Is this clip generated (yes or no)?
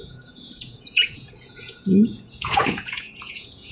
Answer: yes